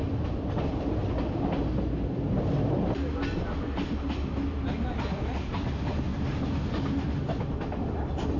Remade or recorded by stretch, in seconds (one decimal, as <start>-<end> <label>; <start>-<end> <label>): 0.0-8.4 recorded